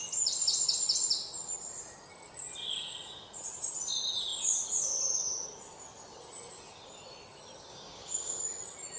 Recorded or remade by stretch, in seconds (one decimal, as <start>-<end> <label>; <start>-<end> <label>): 0.0-7.7 recorded; 7.7-8.4 remade; 8.4-9.0 recorded